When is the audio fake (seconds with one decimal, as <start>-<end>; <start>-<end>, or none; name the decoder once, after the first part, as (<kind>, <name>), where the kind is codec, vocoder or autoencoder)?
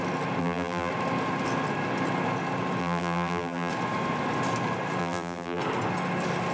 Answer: 0.4-0.9 (vocoder, BigVGAN v2); 2.8-3.7; 5.0-5.6